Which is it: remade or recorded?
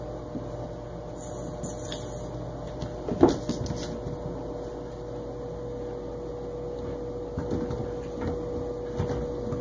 recorded